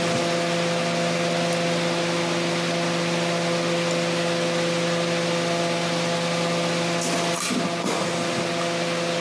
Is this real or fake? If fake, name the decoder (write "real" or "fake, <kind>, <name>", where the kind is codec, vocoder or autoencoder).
real